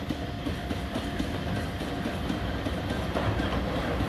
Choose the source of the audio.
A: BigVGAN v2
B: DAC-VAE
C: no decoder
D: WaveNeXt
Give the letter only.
C